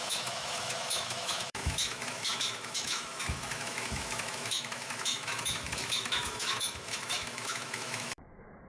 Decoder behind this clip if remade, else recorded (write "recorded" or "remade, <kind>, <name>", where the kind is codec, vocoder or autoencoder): remade, autoencoder, DAC-VAE